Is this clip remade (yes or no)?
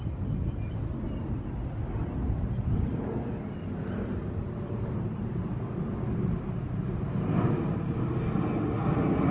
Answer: no